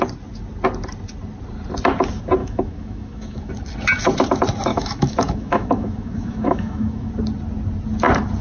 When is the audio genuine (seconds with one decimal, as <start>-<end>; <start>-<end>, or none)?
0.0-2.4; 3.5-4.7; 7.1-8.4